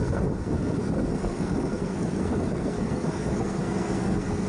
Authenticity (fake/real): fake